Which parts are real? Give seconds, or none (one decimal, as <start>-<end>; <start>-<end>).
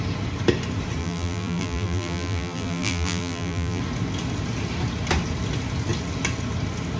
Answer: 0.0-1.0; 3.8-7.0